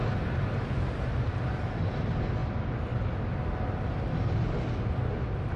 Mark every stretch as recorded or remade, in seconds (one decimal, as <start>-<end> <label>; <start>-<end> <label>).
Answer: 0.0-1.3 remade; 1.3-5.6 recorded